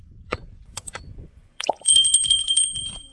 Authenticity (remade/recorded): remade